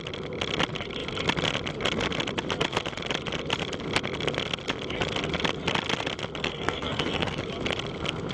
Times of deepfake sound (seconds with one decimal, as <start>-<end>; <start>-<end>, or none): 6.4-7.4